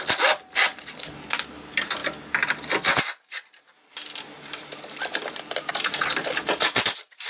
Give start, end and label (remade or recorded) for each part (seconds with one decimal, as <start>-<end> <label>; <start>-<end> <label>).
0.0-7.3 recorded